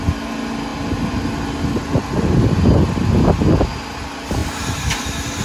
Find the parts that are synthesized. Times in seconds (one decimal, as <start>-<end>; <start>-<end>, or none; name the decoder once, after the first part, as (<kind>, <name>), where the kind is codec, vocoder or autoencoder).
none